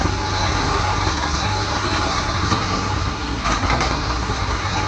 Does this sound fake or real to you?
fake